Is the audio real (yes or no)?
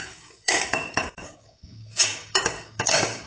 no